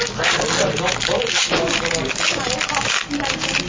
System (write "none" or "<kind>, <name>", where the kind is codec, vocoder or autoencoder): none